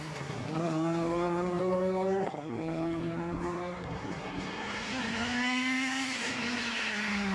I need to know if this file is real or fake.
fake